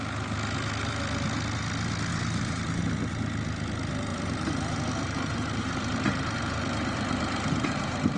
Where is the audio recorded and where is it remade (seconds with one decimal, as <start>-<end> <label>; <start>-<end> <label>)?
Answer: 0.0-2.1 recorded; 2.1-2.8 remade; 2.8-4.1 recorded; 4.1-8.2 remade